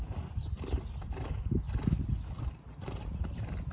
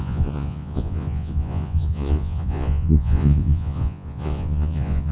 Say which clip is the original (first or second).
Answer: first